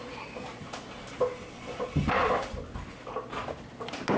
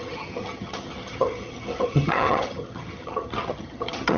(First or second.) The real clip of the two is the first